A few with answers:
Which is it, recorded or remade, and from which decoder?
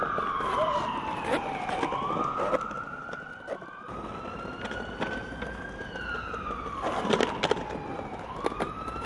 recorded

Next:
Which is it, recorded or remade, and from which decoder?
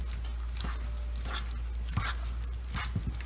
recorded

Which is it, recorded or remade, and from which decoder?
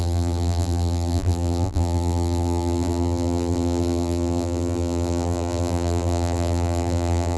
remade, vocoder, BigVGAN v2